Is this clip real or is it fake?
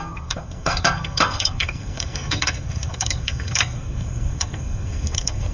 fake